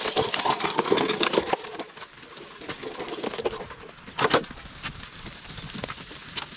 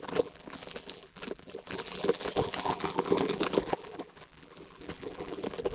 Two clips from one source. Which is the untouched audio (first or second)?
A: first